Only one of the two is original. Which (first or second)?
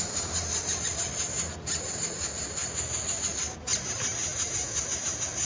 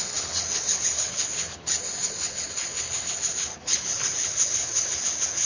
first